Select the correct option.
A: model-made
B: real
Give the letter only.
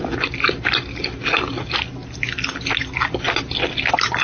B